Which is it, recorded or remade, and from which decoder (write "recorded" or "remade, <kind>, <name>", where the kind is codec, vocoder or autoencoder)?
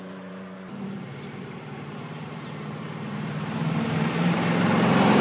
remade, vocoder, BigVGAN v2